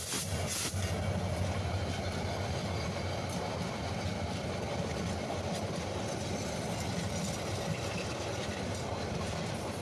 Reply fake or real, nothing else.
real